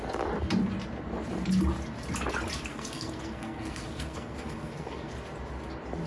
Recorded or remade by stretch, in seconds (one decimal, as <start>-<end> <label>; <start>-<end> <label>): 0.0-2.7 recorded; 2.7-5.1 remade; 5.1-6.1 recorded